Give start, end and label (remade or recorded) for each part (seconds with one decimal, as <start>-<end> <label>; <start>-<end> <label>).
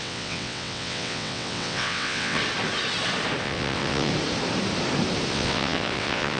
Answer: 0.0-2.4 remade; 2.4-3.4 recorded; 3.4-4.1 remade; 4.1-5.3 recorded; 5.3-6.4 remade